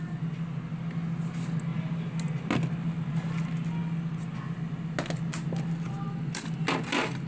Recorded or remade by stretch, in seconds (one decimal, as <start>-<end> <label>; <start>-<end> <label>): 0.0-7.3 recorded